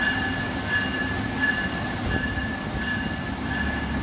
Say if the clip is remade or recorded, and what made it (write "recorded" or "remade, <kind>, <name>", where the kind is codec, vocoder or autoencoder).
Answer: recorded